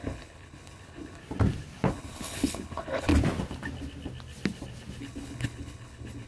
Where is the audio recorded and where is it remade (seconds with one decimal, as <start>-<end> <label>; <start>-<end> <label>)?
0.0-1.2 remade; 1.2-1.9 recorded; 1.9-3.1 remade; 3.1-5.0 recorded; 5.0-6.3 remade